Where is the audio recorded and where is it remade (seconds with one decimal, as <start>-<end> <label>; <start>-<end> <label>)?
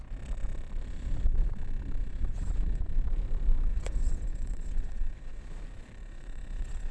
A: 0.0-2.0 recorded; 2.0-2.8 remade; 2.8-3.7 recorded; 3.7-5.4 remade; 5.4-6.0 recorded; 6.0-6.9 remade